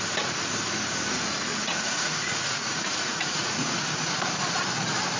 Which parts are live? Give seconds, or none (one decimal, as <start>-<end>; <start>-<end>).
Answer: 0.0-1.5; 3.8-5.2